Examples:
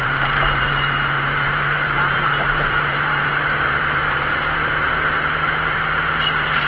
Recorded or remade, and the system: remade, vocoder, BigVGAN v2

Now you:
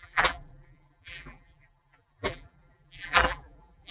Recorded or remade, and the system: remade, vocoder, BigVGAN v2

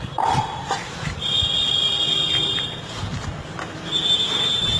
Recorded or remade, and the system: remade, vocoder, BigVGAN v2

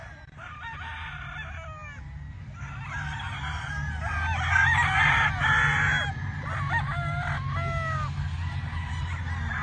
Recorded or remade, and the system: recorded